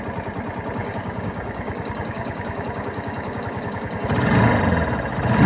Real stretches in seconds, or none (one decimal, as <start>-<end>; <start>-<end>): 0.0-0.8; 4.1-5.5